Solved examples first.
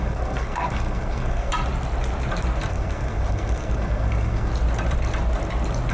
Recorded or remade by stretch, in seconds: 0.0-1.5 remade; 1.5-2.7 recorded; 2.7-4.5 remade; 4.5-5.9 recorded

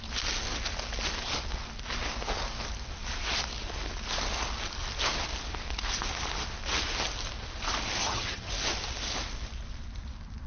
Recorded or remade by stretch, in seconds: 0.0-8.0 recorded; 8.0-8.5 remade; 8.5-10.5 recorded

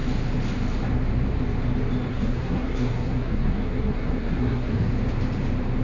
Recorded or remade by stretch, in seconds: 0.0-2.1 recorded; 2.1-4.9 remade; 4.9-5.8 recorded

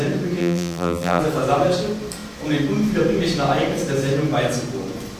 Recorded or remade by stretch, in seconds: 0.0-0.4 recorded; 0.4-1.2 remade; 1.2-5.2 recorded